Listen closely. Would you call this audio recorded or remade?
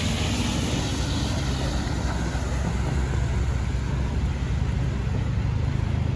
recorded